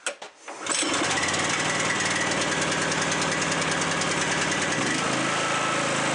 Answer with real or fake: real